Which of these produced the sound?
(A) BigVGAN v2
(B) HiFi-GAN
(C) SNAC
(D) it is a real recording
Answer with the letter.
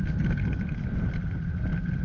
D